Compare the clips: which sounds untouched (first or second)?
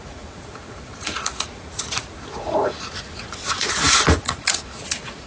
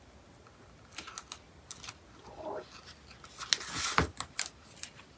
second